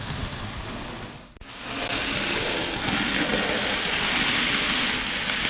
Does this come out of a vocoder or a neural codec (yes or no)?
no